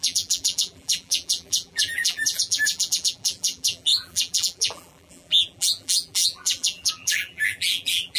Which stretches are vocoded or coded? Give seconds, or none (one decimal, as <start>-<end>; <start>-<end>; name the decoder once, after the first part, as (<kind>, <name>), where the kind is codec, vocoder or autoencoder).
0.0-8.2 (vocoder, BigVGAN v2)